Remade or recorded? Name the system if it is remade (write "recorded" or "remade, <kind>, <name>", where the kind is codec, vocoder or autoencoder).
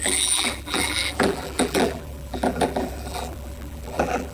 remade, vocoder, BigVGAN v2